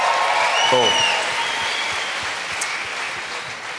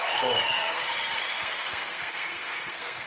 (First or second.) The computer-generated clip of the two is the second